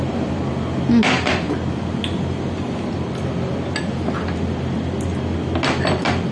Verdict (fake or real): real